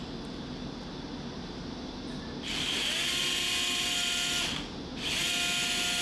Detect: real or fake real